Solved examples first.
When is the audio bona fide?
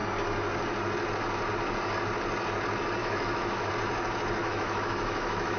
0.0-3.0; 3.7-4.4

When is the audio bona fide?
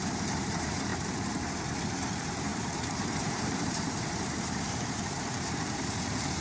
none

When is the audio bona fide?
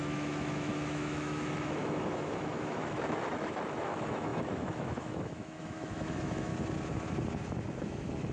6.5-7.8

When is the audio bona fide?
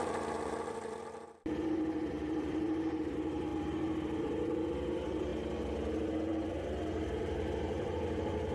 3.5-4.2; 5.3-6.1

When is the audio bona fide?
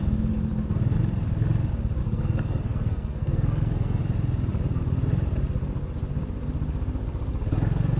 0.0-2.0; 4.0-8.0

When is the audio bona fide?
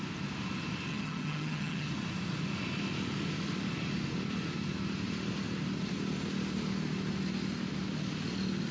0.0-0.9; 1.9-8.7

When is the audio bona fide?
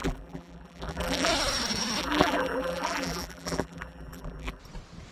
1.3-2.0; 4.6-5.1